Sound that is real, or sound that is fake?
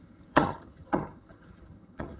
fake